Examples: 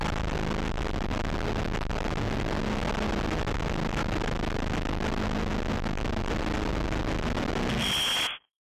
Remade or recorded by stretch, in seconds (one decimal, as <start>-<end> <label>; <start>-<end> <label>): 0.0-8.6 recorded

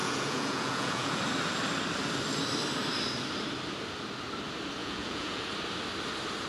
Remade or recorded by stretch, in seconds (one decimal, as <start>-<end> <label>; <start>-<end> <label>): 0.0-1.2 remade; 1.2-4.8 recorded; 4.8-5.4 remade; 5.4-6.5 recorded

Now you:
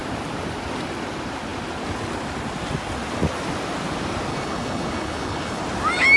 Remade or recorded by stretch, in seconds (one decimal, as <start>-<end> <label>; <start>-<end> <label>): 0.0-4.3 recorded; 4.3-5.6 remade; 5.6-6.2 recorded

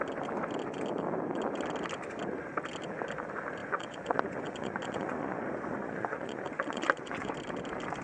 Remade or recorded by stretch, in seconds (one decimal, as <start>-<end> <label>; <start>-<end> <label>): 0.0-3.6 recorded; 3.6-7.3 remade; 7.3-8.0 recorded

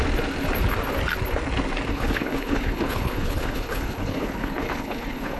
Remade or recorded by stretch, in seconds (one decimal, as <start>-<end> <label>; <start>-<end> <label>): 0.0-1.9 recorded; 1.9-5.4 remade

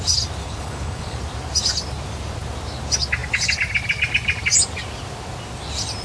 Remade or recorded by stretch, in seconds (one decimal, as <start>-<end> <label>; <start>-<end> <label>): 0.0-0.4 recorded; 0.4-1.2 remade; 1.2-6.0 recorded

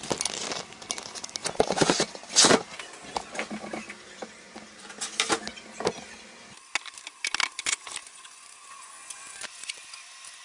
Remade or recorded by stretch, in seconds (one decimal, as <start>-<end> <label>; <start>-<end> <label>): 0.0-1.4 recorded; 1.4-2.0 remade; 2.0-8.0 recorded; 8.0-9.8 remade; 9.8-10.4 recorded

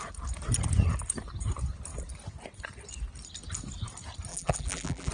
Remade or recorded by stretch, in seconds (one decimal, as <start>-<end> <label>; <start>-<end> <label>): 0.0-4.3 recorded; 4.3-5.1 remade